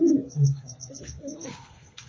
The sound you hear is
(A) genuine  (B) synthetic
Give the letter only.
B